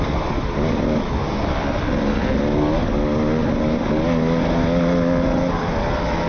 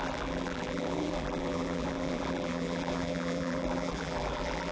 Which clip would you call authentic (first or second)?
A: first